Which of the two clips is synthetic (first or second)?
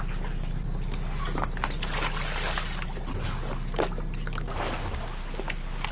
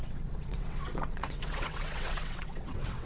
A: second